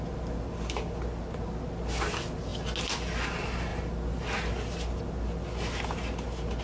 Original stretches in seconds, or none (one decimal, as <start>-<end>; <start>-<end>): 0.0-6.6